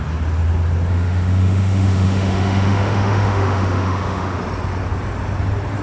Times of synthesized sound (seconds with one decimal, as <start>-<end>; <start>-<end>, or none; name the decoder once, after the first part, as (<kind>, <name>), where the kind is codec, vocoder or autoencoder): 0.9-4.4 (autoencoder, DAC-VAE)